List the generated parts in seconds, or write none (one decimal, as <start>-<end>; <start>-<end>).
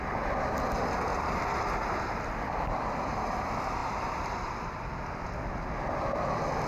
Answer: 1.1-1.8; 3.8-5.7